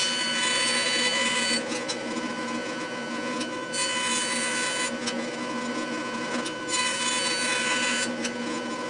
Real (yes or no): no